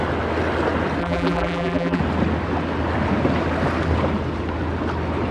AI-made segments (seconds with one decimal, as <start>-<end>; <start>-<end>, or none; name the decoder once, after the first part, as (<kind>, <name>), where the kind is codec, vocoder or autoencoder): 1.0-2.0 (vocoder, BigVGAN v2)